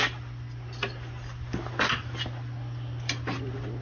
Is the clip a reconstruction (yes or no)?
no